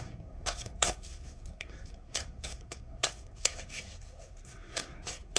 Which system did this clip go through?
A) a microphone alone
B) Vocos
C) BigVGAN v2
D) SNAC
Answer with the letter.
D